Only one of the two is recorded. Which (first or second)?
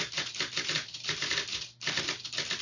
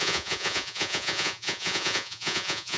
first